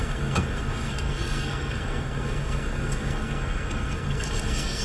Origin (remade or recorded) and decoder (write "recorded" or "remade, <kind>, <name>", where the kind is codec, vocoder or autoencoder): remade, codec, SNAC